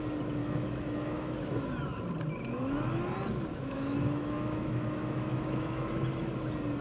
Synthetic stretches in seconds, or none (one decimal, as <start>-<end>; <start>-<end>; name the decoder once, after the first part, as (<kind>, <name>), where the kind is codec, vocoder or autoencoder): 0.4-1.6 (autoencoder, DAC-VAE); 3.5-5.9